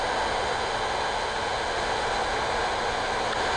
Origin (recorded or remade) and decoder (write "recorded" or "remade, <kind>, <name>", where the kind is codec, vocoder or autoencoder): recorded